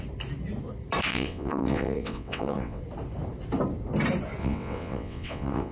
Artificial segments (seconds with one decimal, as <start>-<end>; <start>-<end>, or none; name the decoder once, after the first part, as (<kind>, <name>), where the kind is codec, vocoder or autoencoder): 1.1-2.8 (vocoder, WaveNeXt); 4.4-5.7